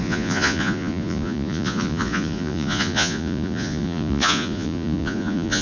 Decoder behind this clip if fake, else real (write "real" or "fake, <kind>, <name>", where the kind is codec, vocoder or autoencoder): fake, vocoder, Vocos